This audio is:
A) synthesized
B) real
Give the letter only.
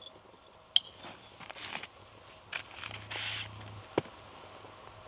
B